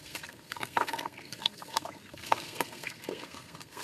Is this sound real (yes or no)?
no